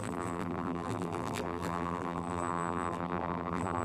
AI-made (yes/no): yes